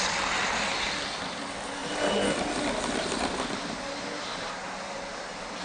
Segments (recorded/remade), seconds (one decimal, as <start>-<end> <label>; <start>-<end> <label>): 0.0-5.6 recorded